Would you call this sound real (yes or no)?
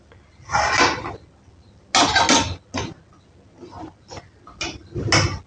yes